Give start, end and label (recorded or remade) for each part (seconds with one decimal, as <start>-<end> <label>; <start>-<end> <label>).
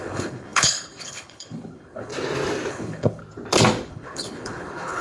0.0-2.1 remade; 2.1-2.7 recorded; 2.7-3.2 remade; 3.2-3.9 recorded; 3.9-5.0 remade